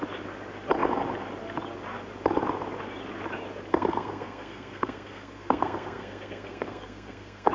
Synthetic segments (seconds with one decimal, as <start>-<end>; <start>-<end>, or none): 3.7-7.5